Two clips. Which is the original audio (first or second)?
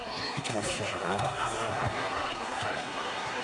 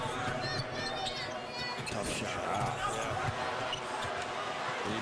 second